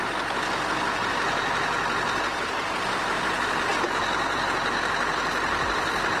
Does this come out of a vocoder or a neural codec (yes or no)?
no